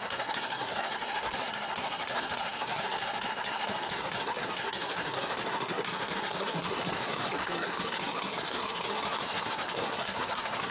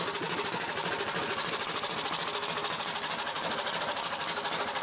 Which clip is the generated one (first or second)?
first